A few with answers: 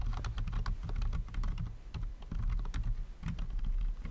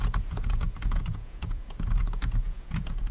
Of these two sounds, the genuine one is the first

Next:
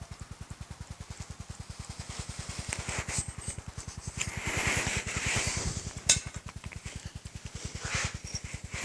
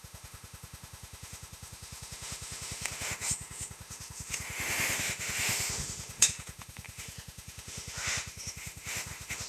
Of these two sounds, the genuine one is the first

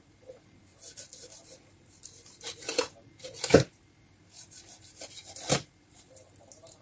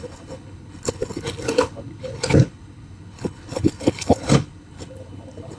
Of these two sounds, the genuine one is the first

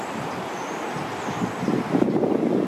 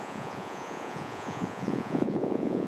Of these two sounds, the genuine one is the first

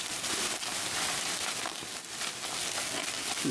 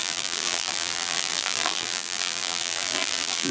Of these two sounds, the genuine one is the first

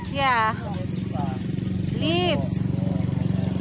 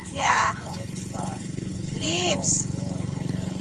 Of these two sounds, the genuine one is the first